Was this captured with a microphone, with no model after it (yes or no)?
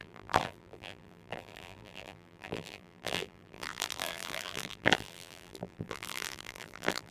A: no